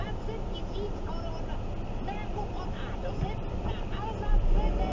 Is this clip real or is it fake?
real